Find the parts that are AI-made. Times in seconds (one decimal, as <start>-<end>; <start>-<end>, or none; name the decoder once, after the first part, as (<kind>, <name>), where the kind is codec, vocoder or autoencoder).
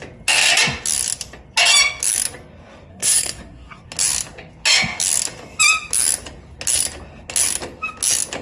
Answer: 2.9-3.8 (codec, SNAC)